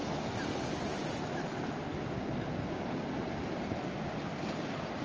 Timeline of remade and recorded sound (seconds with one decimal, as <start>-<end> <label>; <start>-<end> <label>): 0.0-5.0 recorded